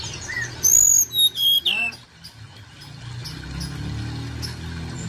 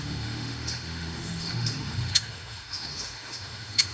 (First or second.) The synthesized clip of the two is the second